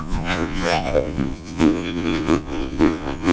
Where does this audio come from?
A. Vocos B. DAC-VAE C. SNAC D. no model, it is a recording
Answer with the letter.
A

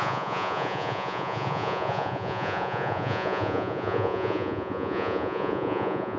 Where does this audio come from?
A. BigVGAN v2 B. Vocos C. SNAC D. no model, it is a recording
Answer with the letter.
B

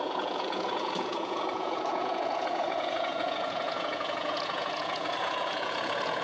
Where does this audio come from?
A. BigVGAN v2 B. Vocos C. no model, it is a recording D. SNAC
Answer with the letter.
B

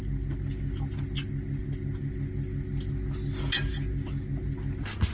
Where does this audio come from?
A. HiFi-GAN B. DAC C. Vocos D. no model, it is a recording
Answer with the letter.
D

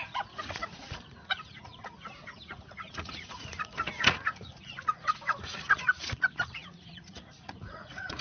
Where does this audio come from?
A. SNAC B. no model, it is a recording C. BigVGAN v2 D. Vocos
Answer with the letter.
D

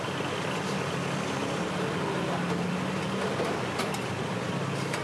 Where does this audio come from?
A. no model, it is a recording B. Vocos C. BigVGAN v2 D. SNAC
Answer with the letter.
A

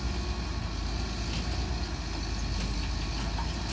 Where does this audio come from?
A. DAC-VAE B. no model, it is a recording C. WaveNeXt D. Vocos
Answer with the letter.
B